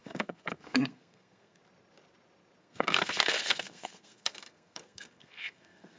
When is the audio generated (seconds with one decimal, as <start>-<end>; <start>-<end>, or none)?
0.0-1.6; 2.6-6.0